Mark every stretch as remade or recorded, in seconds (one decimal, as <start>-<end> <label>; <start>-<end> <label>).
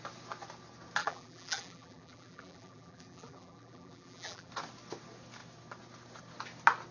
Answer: 0.0-1.0 recorded; 1.0-4.5 remade; 4.5-6.9 recorded